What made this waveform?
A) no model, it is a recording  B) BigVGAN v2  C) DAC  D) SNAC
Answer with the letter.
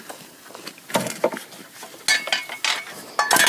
A